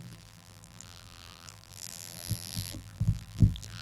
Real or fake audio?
fake